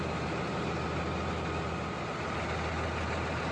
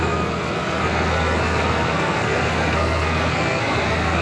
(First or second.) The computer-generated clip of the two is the second